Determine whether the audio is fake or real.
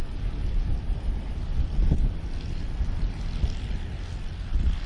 real